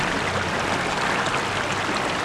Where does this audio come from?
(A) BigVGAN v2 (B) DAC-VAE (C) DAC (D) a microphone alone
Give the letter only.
D